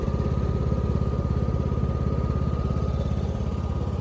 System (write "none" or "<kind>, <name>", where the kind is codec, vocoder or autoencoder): vocoder, BigVGAN v2